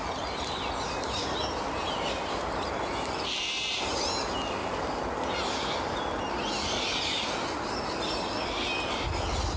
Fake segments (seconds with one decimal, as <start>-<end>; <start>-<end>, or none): none